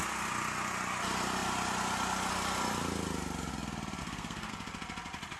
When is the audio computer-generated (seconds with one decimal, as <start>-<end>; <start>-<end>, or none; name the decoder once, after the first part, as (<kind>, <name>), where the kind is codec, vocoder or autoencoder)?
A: 4.0-4.5 (codec, SNAC)

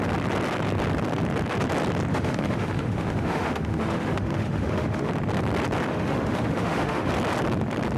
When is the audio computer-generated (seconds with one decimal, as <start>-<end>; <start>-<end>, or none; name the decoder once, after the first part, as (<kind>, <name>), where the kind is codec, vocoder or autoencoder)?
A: 2.1-5.1 (autoencoder, DAC-VAE); 5.9-7.1

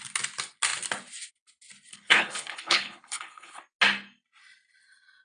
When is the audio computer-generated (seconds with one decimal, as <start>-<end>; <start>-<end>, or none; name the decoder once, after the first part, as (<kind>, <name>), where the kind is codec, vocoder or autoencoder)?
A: 1.9-3.6 (codec, HILCodec)

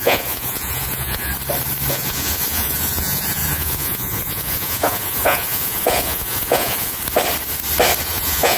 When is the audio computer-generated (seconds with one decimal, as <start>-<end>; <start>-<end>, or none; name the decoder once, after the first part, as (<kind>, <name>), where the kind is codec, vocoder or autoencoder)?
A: 0.0-1.3 (vocoder, Vocos); 1.9-7.0; 8.0-8.6

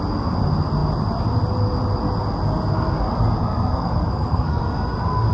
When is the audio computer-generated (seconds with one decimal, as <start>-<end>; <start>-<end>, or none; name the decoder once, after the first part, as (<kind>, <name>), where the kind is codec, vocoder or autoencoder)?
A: 3.4-4.6 (codec, SNAC)